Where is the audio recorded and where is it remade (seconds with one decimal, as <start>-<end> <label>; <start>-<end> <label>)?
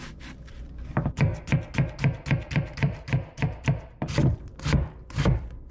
0.0-1.3 remade; 1.3-2.5 recorded; 2.5-5.7 remade